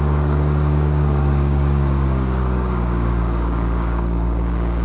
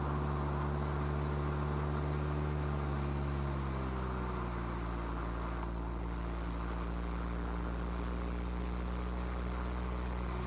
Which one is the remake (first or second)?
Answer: first